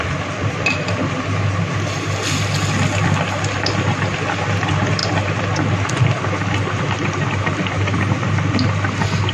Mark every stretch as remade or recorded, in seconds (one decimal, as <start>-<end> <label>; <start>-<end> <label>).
0.0-9.3 remade